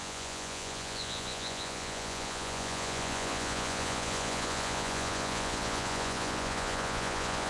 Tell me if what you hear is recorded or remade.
remade